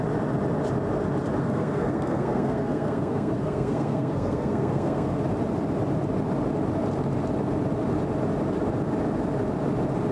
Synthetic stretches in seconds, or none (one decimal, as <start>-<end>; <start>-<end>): 1.4-5.2